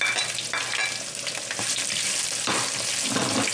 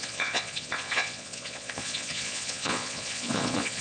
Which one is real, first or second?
first